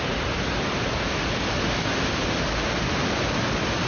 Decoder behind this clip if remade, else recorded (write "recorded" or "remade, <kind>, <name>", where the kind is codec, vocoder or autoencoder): recorded